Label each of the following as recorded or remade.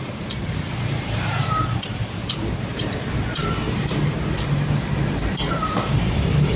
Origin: remade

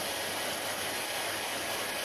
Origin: recorded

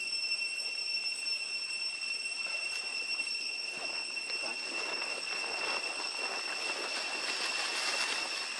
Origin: recorded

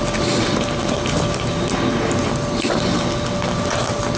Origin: recorded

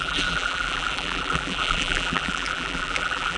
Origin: remade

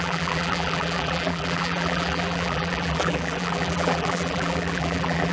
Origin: remade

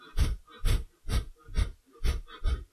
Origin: recorded